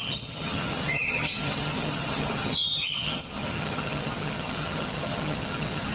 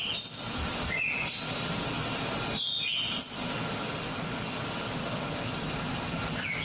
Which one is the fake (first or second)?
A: first